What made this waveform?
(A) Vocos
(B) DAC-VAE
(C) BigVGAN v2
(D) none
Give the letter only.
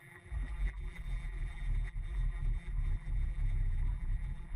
C